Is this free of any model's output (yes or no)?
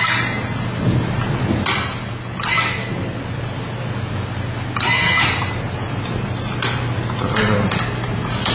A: yes